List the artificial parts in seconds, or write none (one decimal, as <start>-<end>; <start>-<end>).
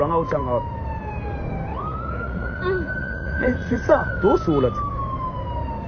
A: 1.7-2.6; 3.0-4.1